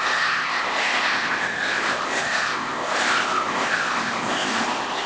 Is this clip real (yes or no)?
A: no